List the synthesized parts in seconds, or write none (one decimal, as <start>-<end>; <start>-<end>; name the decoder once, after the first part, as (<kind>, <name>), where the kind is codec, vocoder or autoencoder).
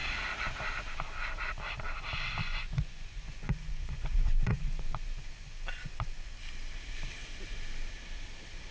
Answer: 2.4-6.3 (vocoder, Vocos)